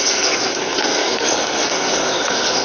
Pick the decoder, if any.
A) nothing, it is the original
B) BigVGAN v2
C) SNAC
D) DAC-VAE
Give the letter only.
C